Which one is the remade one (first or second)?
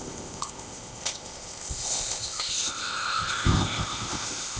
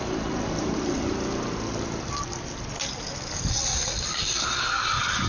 first